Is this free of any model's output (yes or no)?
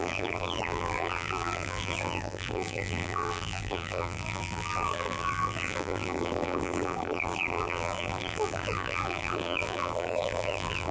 no